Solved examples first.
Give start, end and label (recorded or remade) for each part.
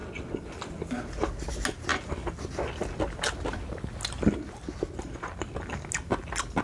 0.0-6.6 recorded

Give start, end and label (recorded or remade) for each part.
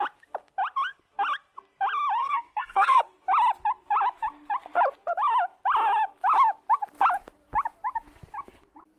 0.0-2.2 recorded; 2.2-3.0 remade; 3.0-9.0 recorded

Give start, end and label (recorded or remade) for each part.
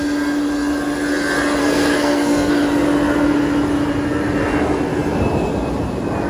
0.0-1.6 recorded; 1.6-2.5 remade; 2.5-6.3 recorded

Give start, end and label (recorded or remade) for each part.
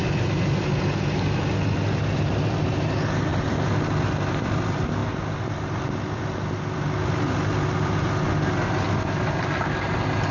0.0-10.3 recorded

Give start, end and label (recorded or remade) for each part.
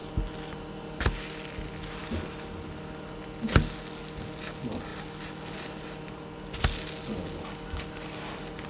0.0-8.7 recorded